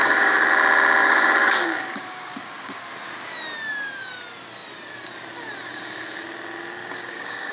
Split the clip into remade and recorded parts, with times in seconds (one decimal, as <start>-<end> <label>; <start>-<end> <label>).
0.0-0.5 remade; 0.5-1.0 recorded; 1.0-2.8 remade; 2.8-6.8 recorded; 6.8-7.5 remade

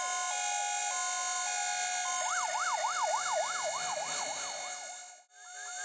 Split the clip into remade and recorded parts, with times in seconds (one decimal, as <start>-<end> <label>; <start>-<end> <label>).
0.0-5.8 recorded

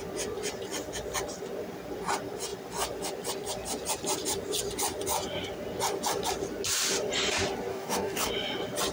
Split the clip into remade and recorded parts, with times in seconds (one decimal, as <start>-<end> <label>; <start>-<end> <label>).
0.0-7.7 recorded; 7.7-8.3 remade; 8.3-8.9 recorded

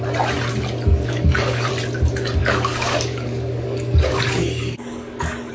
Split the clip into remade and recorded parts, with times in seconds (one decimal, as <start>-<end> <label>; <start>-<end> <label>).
0.0-0.9 recorded; 0.9-1.7 remade; 1.7-2.4 recorded; 2.4-5.5 remade

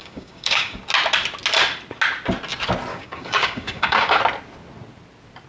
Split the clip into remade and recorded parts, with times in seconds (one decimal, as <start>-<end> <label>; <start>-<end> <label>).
0.0-0.8 remade; 0.8-2.9 recorded; 2.9-4.2 remade; 4.2-5.5 recorded